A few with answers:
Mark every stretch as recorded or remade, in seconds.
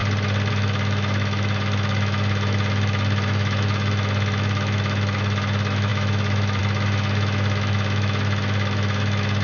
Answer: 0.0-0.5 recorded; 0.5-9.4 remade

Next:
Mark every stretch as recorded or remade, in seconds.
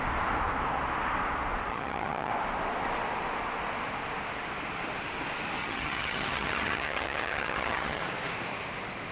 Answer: 0.0-1.7 recorded; 1.7-2.3 remade; 2.3-5.6 recorded; 5.6-8.0 remade; 8.0-9.1 recorded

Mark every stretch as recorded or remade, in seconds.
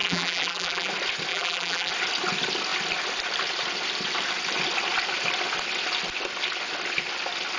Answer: 0.0-0.9 remade; 0.9-1.3 recorded; 1.3-1.9 remade; 1.9-7.6 recorded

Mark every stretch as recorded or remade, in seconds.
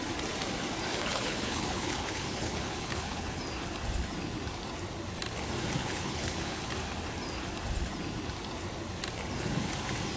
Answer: 0.0-0.9 recorded; 0.9-3.4 remade; 3.4-5.8 recorded; 5.8-6.6 remade; 6.6-10.2 recorded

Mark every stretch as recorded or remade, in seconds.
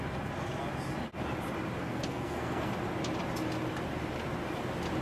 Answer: 0.0-1.8 recorded; 1.8-2.7 remade; 2.7-5.0 recorded